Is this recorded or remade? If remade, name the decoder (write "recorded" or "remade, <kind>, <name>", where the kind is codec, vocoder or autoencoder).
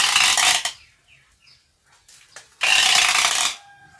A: recorded